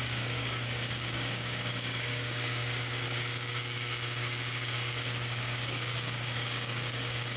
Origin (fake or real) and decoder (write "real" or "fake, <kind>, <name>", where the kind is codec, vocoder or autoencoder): fake, codec, DAC